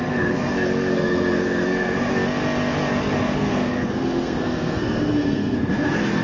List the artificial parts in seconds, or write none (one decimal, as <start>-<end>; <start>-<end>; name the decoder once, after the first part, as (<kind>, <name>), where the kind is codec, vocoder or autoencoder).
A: 0.0-2.1 (codec, SNAC); 3.2-6.2